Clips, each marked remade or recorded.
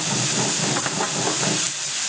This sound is recorded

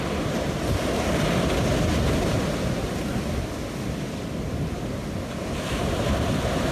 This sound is recorded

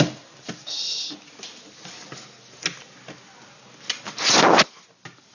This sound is recorded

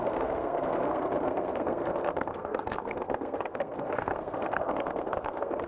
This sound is remade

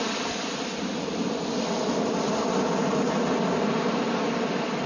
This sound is recorded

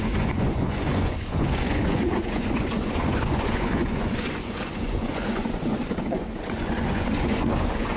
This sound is remade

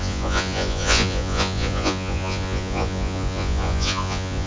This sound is remade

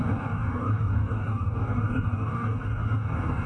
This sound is remade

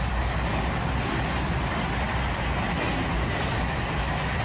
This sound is recorded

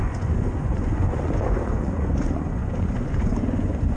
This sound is remade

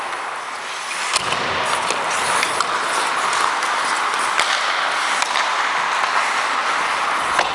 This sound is recorded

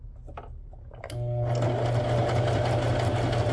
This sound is recorded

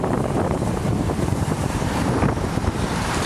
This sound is remade